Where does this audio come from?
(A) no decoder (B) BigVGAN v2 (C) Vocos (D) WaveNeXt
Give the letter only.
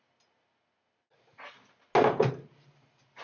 A